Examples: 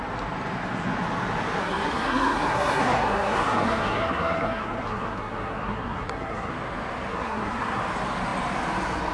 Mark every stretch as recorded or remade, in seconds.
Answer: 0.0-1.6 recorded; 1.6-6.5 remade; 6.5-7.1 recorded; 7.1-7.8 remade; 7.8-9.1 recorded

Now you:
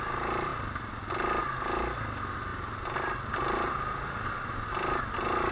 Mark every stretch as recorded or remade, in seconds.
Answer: 0.0-5.5 recorded